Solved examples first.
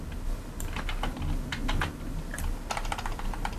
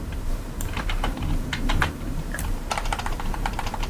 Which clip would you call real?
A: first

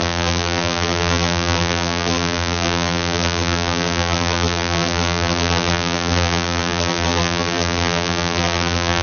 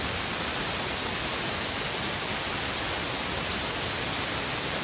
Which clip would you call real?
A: second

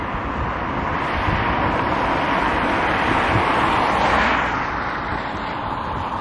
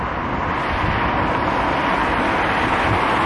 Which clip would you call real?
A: second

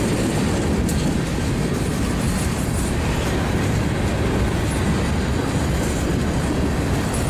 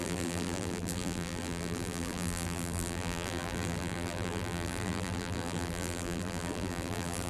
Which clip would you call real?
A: first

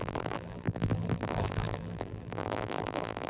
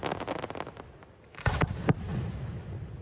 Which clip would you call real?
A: second